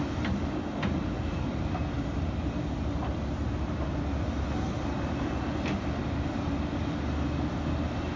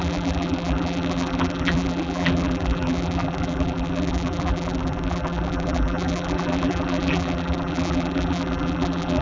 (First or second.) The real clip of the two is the first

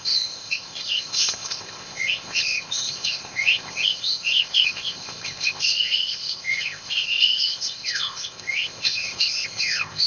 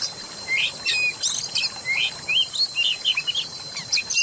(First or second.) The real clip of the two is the second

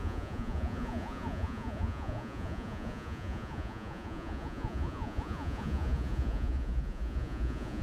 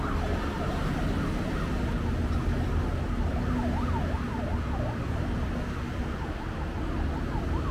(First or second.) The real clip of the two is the second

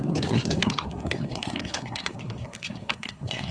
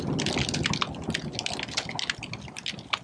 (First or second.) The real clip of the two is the second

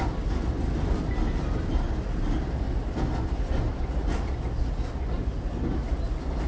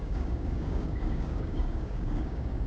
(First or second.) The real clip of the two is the first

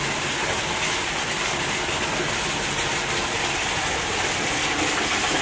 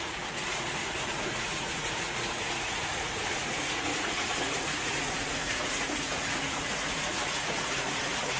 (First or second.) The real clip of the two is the first